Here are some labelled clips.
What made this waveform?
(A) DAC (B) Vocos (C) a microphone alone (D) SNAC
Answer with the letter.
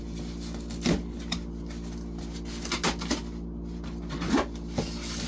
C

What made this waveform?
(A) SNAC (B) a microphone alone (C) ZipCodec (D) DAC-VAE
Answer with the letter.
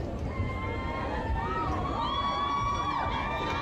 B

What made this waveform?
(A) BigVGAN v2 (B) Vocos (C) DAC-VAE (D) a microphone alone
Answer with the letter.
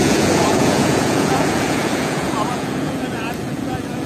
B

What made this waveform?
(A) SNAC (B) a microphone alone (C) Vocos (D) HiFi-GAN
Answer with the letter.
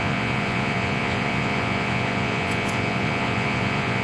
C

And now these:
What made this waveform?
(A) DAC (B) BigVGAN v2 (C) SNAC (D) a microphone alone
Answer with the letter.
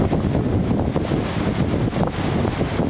D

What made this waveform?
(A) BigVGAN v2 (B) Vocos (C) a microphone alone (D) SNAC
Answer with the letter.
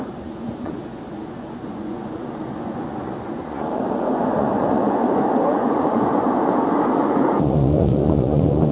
B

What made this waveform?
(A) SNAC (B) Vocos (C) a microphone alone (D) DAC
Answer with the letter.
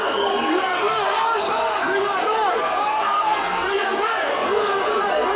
A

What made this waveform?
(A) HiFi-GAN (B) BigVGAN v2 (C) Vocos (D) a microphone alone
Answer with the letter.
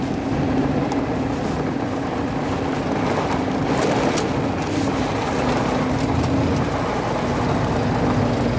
D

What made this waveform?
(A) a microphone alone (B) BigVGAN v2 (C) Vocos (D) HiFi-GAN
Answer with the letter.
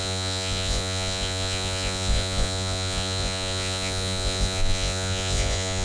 C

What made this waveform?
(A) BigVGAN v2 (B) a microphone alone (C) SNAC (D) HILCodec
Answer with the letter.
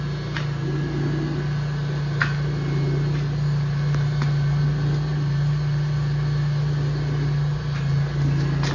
B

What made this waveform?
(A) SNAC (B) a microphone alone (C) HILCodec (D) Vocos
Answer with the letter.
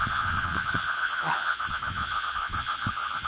D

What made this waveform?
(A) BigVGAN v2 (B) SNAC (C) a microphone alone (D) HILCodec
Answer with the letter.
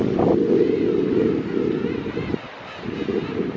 C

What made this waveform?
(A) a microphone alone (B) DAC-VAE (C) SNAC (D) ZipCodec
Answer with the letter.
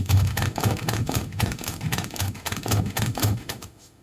B